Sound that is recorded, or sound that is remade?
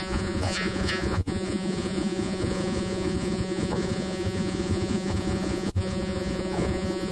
remade